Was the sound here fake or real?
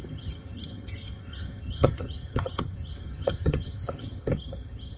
fake